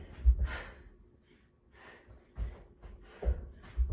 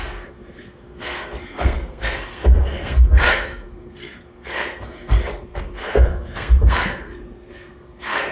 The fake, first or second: second